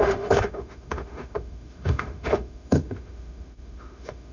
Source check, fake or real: fake